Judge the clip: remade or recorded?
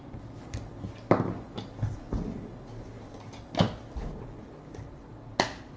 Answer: recorded